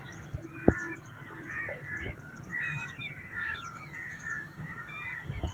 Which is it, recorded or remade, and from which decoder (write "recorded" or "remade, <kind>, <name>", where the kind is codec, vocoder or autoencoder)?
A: remade, codec, DAC